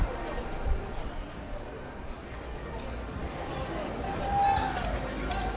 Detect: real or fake real